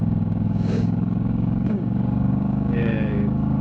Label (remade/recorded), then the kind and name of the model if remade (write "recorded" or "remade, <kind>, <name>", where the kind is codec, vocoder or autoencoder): remade, codec, DAC